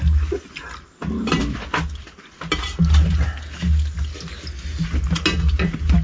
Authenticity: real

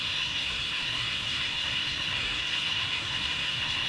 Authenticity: fake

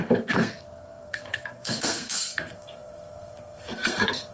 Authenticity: fake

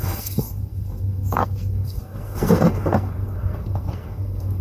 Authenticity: fake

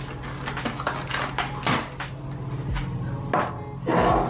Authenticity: real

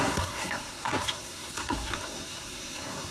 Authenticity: fake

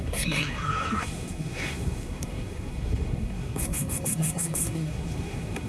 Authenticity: fake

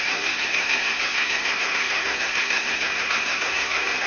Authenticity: fake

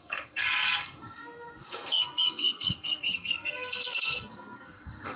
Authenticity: fake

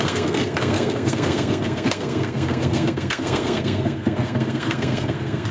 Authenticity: fake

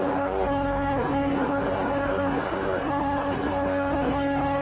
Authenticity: fake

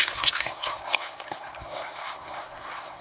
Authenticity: fake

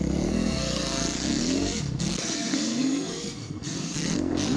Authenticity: fake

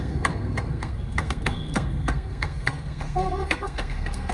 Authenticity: fake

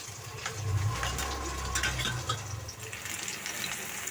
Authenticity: real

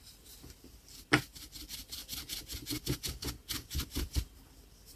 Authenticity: real